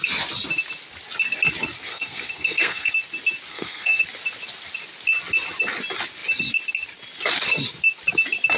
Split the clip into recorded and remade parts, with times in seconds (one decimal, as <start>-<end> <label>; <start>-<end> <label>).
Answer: 0.0-1.9 recorded; 1.9-2.9 remade; 2.9-3.5 recorded; 3.5-4.0 remade; 4.0-8.6 recorded